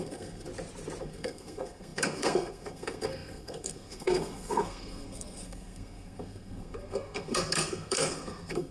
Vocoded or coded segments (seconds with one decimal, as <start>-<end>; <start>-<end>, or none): 0.0-0.5; 1.0-8.7